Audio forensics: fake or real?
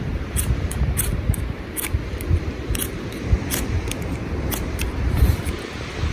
fake